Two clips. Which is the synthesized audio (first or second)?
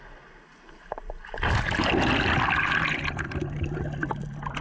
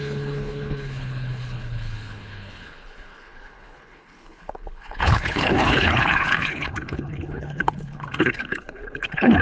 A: second